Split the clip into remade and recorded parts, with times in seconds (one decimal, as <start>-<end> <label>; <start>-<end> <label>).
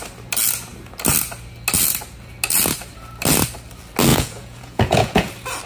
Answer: 0.0-4.1 recorded; 4.1-5.3 remade; 5.3-5.7 recorded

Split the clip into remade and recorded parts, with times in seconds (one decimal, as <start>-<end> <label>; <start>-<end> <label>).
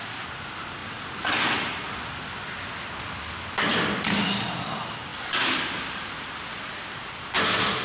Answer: 0.0-7.8 recorded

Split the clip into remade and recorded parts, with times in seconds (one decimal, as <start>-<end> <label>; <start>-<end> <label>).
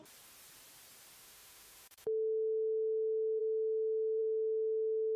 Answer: 0.0-1.2 recorded; 1.2-3.4 remade; 3.4-4.2 recorded; 4.2-5.2 remade